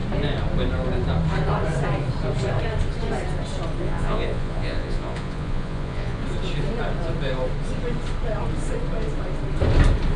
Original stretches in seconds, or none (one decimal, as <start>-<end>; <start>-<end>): 0.0-3.8; 6.2-10.2